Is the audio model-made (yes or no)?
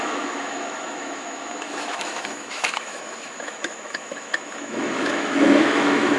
yes